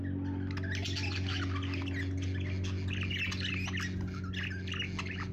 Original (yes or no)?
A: yes